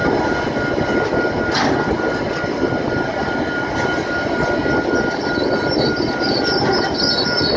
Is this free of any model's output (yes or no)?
yes